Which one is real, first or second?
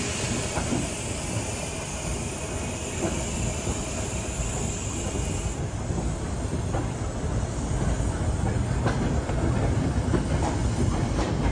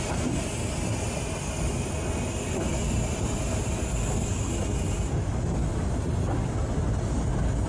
second